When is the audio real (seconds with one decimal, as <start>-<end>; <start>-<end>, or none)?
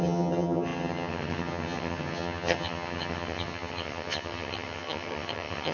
none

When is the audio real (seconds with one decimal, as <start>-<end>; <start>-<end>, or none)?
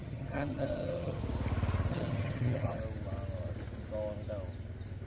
1.2-1.9; 2.8-5.1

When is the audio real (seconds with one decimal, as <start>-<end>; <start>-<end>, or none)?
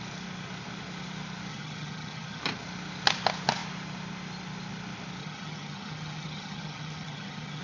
0.0-1.5; 2.4-5.2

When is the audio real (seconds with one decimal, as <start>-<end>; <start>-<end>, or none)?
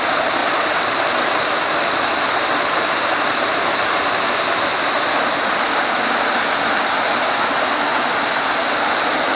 0.0-9.3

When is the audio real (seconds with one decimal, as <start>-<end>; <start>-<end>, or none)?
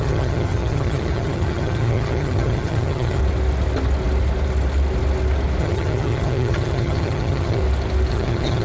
3.2-5.6; 7.6-8.1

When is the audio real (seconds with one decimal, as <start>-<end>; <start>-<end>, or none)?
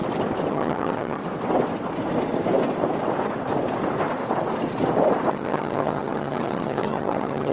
0.0-0.5; 1.2-5.3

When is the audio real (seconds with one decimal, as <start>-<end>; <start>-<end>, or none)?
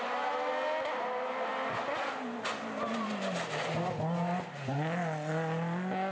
0.0-6.1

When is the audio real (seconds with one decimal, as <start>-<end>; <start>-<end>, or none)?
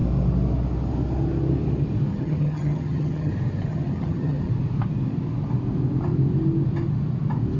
0.0-2.1; 3.3-3.7; 4.5-7.6